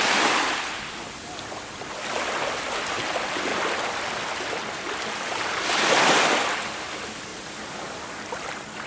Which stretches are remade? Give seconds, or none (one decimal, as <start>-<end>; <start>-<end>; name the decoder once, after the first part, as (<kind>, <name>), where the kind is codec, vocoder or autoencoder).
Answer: none